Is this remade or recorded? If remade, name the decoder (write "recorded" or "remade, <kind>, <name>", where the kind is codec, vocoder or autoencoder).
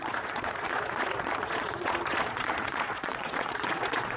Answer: remade, vocoder, Vocos